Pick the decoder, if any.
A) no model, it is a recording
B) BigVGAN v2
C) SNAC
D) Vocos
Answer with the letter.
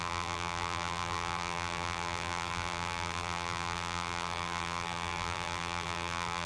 B